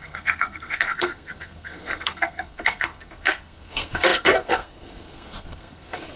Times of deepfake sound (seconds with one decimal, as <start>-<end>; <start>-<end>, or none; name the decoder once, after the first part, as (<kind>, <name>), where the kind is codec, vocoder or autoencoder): 0.0-6.2 (codec, SNAC)

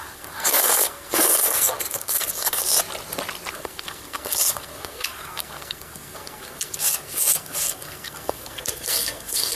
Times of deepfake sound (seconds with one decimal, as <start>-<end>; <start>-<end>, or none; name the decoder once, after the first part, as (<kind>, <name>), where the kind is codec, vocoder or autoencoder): 0.0-2.7 (codec, SNAC); 3.5-9.6